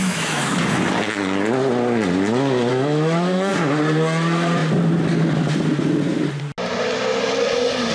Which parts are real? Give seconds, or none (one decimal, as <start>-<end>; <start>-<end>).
0.6-2.7; 3.5-7.9